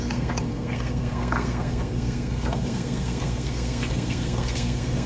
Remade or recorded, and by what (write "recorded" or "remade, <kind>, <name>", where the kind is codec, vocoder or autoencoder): remade, codec, SNAC